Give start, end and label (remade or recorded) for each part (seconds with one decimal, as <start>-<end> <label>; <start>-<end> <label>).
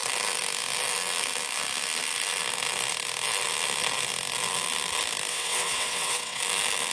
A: 0.0-5.3 recorded; 5.3-6.4 remade; 6.4-6.9 recorded